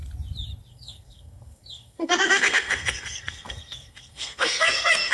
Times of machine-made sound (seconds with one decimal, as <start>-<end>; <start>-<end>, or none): 0.7-5.1